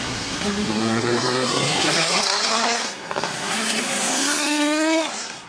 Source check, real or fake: fake